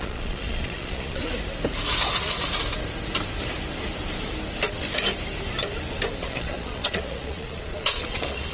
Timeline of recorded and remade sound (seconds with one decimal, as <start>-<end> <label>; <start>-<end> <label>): 0.0-1.2 remade; 1.2-6.2 recorded; 6.2-8.5 remade